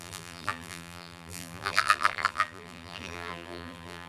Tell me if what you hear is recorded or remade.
remade